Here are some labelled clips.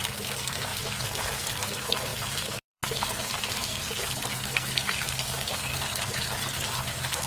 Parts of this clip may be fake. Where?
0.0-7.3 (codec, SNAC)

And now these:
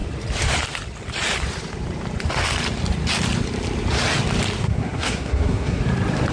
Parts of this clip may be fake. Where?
4.6-5.8 (codec, SNAC)

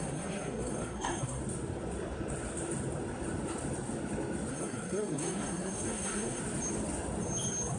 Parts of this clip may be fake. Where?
0.0-1.4 (codec, SNAC); 4.5-6.4

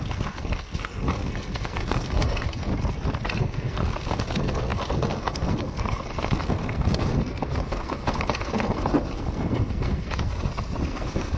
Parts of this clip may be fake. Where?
0.0-2.7 (codec, SNAC); 3.4-11.4